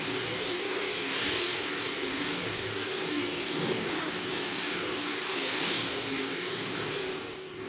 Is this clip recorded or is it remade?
remade